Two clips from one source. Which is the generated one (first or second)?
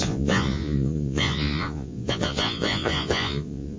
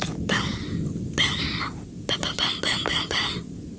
first